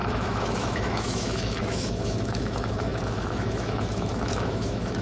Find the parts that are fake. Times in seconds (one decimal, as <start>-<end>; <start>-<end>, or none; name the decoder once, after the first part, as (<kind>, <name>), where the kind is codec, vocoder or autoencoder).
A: 0.0-5.0 (autoencoder, DAC-VAE)